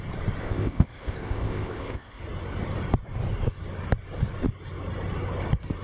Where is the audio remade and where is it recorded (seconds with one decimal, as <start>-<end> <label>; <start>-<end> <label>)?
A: 0.0-0.4 recorded; 0.4-2.2 remade; 2.2-5.8 recorded